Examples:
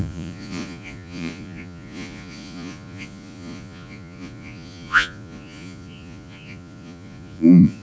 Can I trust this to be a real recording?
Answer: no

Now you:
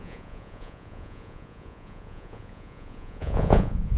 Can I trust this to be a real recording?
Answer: no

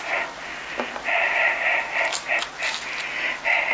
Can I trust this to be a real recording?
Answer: yes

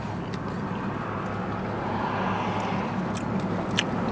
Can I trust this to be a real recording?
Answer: yes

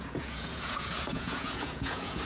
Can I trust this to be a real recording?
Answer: no